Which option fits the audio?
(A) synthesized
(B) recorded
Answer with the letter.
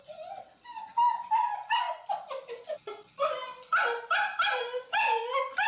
B